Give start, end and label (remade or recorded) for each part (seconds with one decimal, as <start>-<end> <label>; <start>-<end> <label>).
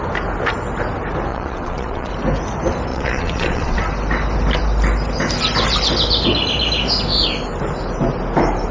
0.0-1.3 recorded; 1.3-2.1 remade; 2.1-2.9 recorded; 2.9-3.8 remade; 3.8-8.7 recorded